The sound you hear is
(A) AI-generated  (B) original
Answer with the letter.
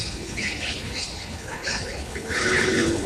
A